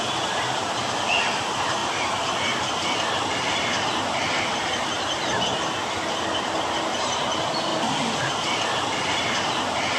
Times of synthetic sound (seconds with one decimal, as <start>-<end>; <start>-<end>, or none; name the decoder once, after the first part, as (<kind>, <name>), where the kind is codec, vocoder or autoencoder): 7.7-8.3 (vocoder, BigVGAN v2)